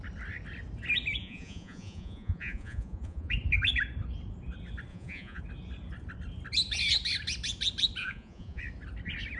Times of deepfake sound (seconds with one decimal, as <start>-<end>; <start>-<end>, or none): 1.2-3.3; 4.9-5.4; 8.0-8.6